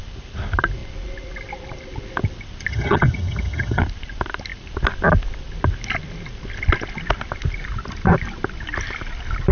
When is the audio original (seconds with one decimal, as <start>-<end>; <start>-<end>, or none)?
0.0-2.7; 3.8-9.5